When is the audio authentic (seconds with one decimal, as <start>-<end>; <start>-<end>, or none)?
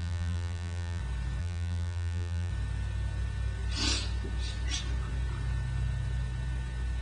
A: 1.0-1.4; 2.5-7.0